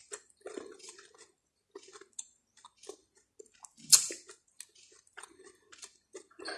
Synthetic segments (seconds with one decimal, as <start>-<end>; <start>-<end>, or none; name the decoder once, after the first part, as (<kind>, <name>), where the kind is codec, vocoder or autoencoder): 0.0-1.3 (vocoder, BigVGAN v2)